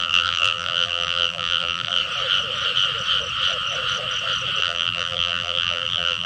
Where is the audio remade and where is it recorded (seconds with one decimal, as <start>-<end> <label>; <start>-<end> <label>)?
0.0-2.0 remade; 2.0-4.6 recorded; 4.6-6.3 remade